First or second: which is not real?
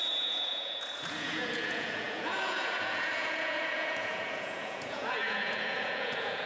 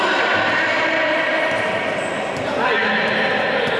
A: first